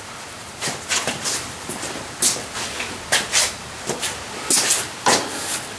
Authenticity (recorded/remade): recorded